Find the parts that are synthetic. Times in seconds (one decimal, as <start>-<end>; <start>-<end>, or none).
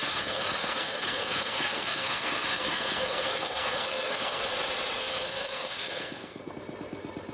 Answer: 0.0-4.4; 5.0-6.5